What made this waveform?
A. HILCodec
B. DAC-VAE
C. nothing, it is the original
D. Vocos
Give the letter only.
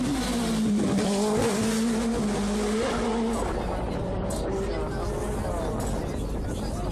C